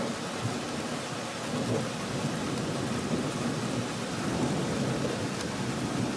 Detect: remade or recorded recorded